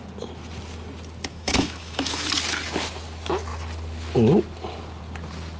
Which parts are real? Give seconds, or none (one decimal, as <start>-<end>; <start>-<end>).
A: 0.0-1.3; 2.3-5.6